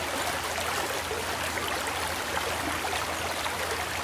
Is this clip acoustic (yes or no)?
yes